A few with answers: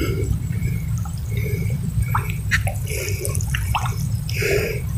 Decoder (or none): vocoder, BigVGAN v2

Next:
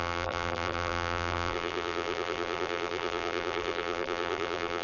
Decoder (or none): vocoder, BigVGAN v2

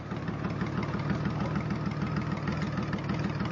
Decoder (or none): none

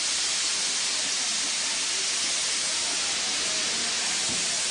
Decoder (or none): none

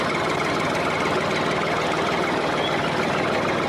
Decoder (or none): none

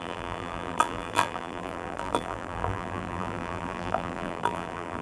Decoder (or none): vocoder, BigVGAN v2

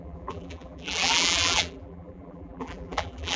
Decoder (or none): vocoder, BigVGAN v2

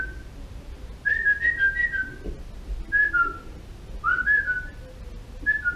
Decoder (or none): none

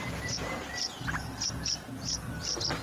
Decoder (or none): vocoder, BigVGAN v2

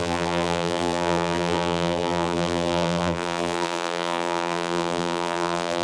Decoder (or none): vocoder, BigVGAN v2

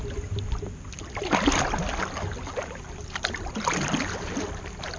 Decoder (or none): none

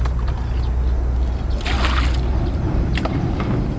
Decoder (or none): none